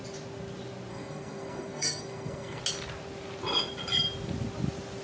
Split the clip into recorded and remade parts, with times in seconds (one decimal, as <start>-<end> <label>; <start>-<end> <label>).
0.0-0.9 recorded; 0.9-2.6 remade; 2.6-5.0 recorded